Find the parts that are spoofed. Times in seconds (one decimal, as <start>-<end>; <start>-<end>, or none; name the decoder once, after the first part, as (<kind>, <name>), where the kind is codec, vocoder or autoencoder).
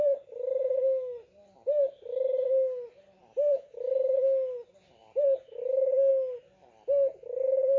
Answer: none